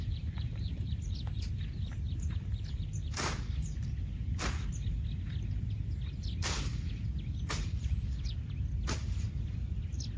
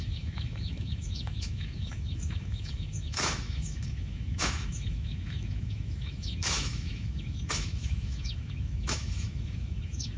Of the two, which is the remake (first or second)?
second